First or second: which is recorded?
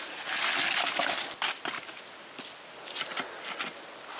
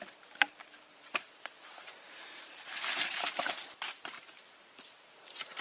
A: first